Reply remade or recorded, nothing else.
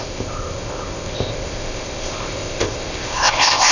remade